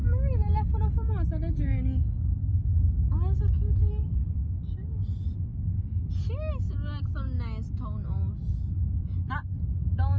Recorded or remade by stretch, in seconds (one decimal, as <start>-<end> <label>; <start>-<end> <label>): 0.0-5.5 recorded; 5.5-6.1 remade; 6.1-10.2 recorded